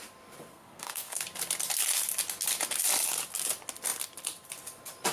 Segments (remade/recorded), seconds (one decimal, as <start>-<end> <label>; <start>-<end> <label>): 0.0-0.5 recorded; 0.5-1.2 remade; 1.2-5.1 recorded